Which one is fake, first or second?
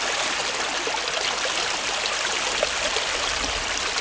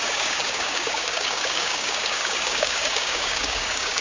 second